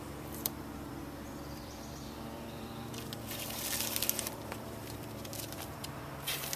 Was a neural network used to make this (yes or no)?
yes